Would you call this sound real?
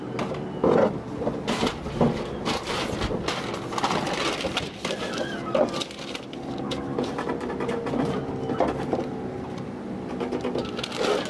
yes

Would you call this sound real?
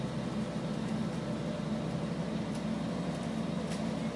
yes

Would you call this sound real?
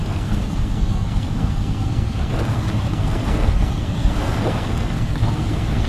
no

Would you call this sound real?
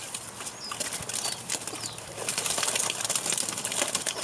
yes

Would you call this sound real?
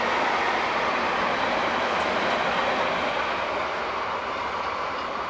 yes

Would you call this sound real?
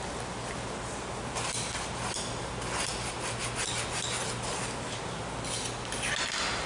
yes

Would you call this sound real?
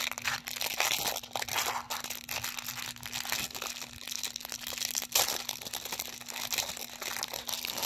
yes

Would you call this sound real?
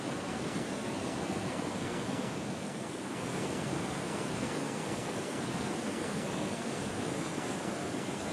no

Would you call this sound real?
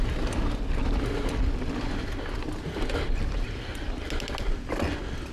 yes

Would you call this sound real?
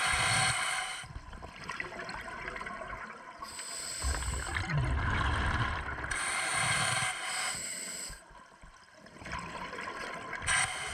yes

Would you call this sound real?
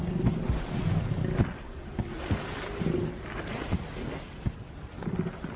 yes